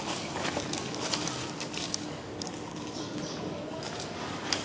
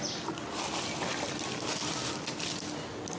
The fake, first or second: first